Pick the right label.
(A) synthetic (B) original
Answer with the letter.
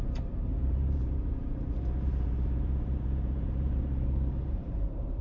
A